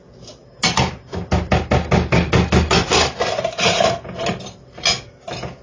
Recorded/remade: recorded